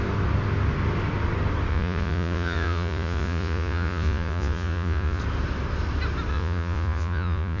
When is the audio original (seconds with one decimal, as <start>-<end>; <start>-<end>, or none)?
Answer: 0.0-1.7; 5.2-6.3